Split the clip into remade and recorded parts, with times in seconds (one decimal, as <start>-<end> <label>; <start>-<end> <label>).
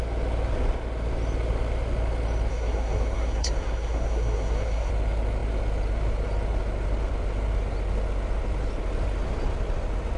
0.0-2.5 recorded; 2.5-4.9 remade; 4.9-10.2 recorded